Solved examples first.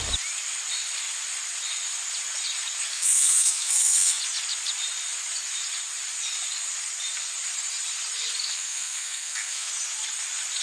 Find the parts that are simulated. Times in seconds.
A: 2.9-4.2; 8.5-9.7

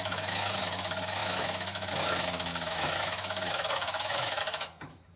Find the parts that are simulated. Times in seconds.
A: 0.0-5.2

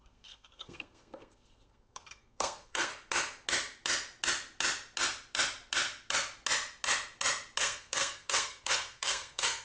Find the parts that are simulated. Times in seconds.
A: 0.0-2.9; 7.6-9.6

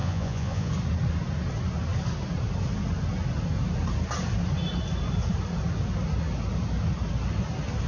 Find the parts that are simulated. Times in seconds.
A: 0.0-0.7

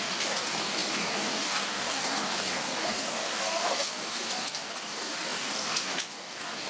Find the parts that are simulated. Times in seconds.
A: 0.0-6.7

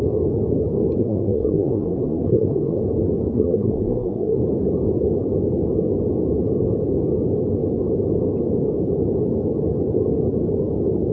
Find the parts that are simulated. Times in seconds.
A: 1.0-2.8; 3.3-4.4

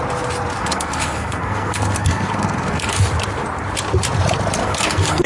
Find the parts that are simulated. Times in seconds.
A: 0.6-3.0; 4.6-5.3

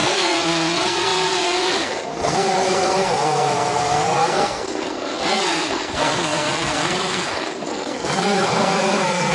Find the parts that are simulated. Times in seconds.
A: 0.0-9.3